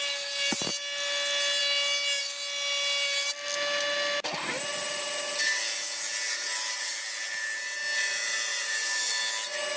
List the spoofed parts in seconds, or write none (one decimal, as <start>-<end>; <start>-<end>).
4.7-5.6; 8.5-9.2